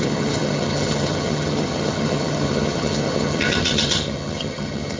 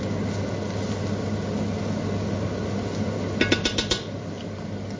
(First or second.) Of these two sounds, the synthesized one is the first